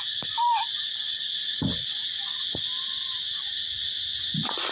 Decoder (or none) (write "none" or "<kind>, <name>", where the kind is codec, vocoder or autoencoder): none